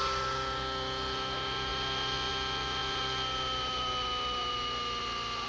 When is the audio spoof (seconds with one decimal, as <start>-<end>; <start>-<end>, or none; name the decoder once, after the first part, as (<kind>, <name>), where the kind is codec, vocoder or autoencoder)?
none